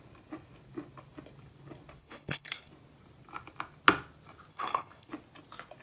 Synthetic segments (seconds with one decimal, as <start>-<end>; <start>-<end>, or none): 2.0-2.7; 4.5-5.1